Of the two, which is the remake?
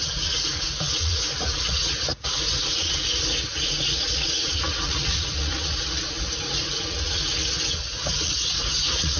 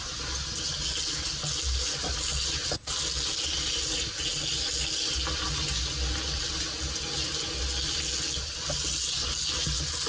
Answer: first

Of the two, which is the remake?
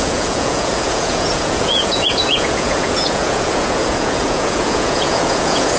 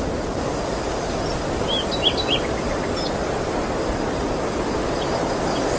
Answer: first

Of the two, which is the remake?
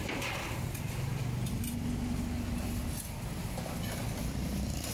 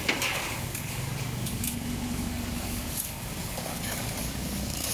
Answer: second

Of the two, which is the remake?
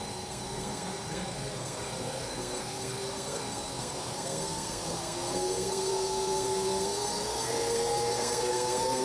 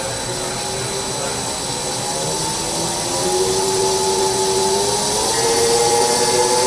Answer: first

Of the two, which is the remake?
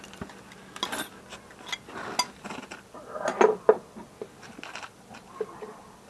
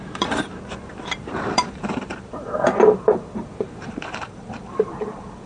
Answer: second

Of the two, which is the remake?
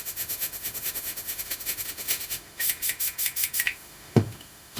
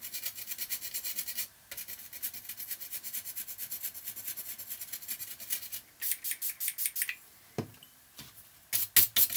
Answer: first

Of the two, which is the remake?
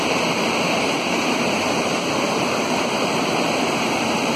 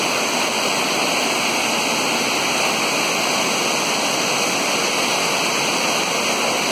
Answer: first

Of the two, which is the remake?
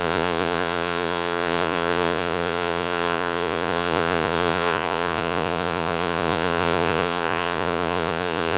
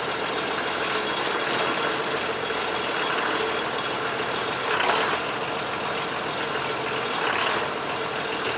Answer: first